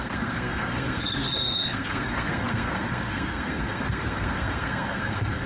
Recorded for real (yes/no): no